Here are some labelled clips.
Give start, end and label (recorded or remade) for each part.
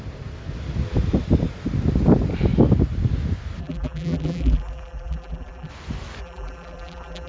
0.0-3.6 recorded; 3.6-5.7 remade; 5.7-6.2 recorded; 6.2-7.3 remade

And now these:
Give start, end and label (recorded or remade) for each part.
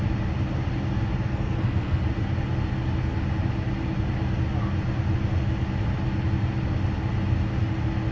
0.0-1.3 recorded; 1.3-2.0 remade; 2.0-8.1 recorded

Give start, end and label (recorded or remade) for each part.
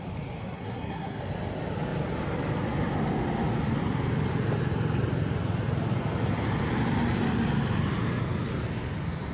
0.0-0.4 recorded; 0.4-1.2 remade; 1.2-9.3 recorded